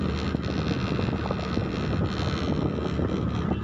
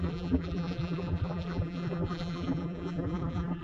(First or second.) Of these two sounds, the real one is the first